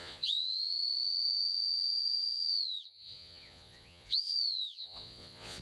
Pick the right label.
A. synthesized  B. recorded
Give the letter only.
A